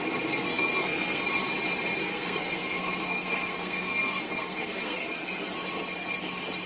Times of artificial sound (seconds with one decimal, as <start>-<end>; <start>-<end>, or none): 0.4-1.2; 2.0-5.2